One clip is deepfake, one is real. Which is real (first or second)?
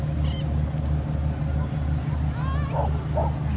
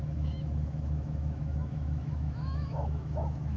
first